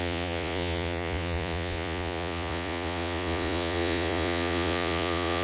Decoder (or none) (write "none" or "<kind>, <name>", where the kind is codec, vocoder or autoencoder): vocoder, Vocos